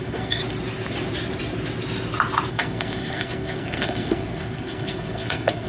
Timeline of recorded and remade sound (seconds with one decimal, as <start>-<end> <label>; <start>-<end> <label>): 0.0-0.4 remade; 0.4-2.5 recorded; 2.5-5.7 remade